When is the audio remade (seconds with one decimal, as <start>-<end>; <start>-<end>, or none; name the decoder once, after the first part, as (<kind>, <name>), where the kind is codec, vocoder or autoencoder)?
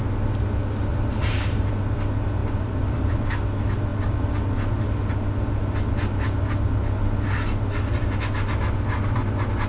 0.9-1.7 (vocoder, BigVGAN v2); 2.4-3.3